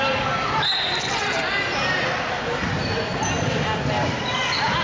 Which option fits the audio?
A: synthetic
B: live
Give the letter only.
B